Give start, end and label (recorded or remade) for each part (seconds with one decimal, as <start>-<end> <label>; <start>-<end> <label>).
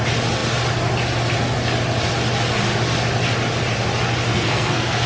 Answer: 0.0-4.3 recorded; 4.3-5.1 remade